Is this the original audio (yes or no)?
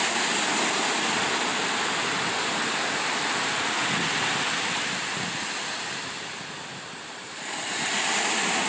yes